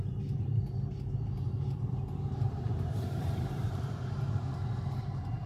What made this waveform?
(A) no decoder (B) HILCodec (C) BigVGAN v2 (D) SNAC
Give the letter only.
C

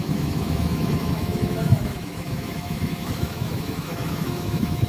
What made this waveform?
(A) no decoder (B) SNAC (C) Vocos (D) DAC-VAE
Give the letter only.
D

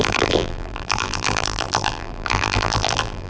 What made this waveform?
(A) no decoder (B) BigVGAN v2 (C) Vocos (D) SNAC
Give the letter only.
B